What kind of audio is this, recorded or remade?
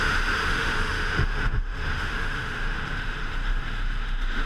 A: remade